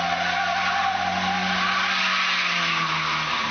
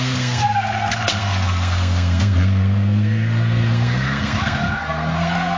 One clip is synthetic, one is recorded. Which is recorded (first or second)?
first